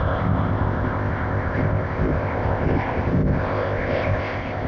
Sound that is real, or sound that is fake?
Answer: fake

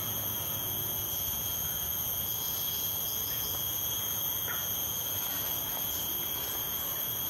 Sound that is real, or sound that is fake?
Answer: fake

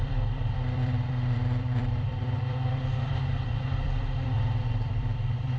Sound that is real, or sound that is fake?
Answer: fake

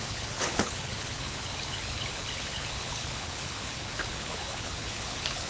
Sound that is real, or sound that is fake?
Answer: fake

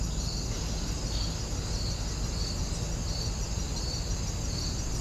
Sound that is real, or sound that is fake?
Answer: real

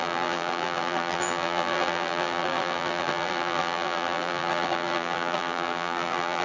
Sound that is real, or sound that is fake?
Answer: fake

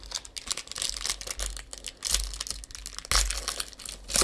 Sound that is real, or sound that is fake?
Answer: real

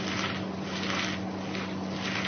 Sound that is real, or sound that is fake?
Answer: real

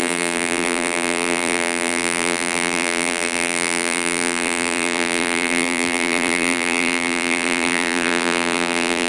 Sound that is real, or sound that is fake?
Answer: fake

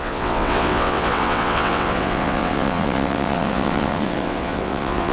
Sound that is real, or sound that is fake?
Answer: fake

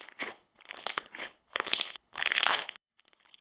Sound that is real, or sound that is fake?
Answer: fake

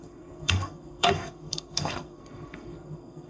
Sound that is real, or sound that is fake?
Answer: fake